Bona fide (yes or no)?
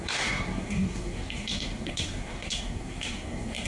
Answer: no